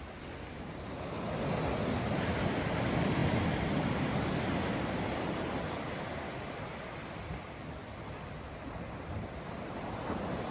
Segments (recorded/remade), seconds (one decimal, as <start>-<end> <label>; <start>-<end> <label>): 0.0-10.5 recorded